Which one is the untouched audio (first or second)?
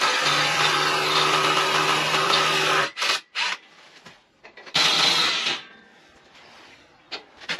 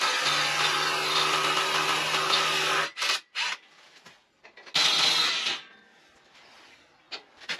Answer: second